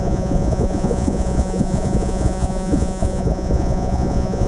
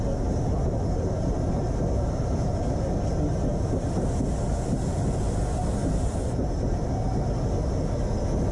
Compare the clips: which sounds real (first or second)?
second